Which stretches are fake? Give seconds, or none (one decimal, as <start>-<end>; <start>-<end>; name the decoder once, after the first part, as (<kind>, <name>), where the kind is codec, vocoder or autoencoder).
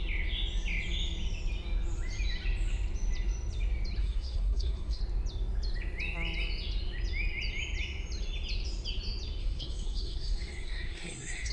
4.0-5.0 (codec, SNAC); 9.4-11.5